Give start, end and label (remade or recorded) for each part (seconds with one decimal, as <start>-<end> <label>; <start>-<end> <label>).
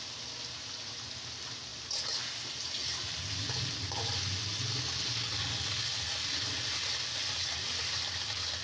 0.0-8.6 recorded